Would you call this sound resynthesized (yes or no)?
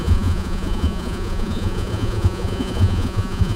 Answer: yes